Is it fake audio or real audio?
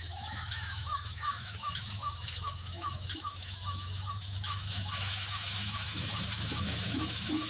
fake